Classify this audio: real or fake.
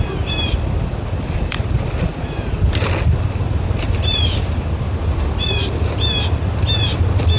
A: real